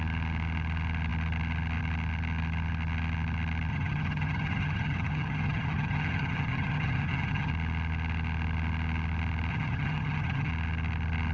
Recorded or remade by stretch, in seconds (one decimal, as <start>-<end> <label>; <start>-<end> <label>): 0.0-3.7 recorded; 3.7-7.5 remade; 7.5-9.5 recorded; 9.5-10.5 remade; 10.5-11.3 recorded